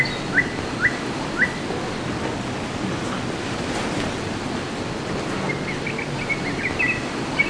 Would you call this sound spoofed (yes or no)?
no